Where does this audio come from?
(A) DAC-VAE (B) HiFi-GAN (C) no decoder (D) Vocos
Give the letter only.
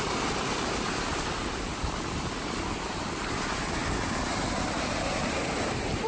C